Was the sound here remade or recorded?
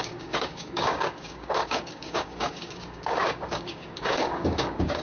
remade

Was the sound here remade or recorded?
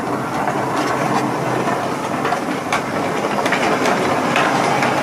recorded